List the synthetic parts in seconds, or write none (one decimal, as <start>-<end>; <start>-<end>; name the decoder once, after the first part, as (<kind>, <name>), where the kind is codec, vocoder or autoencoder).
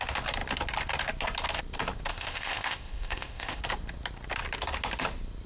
2.1-3.6 (codec, ZipCodec)